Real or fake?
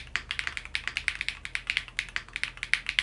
real